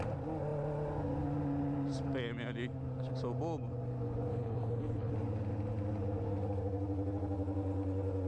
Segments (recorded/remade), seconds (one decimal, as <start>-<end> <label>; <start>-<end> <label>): 0.0-4.3 recorded; 4.3-5.1 remade; 5.1-8.3 recorded